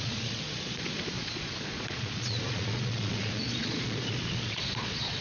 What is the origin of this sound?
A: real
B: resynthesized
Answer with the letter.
B